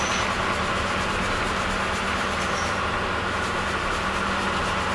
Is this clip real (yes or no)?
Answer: yes